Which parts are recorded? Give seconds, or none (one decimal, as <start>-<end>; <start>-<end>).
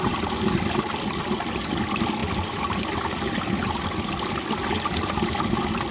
0.0-5.9